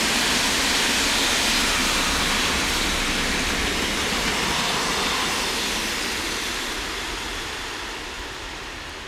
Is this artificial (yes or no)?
no